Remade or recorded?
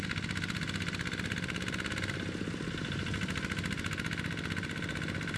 recorded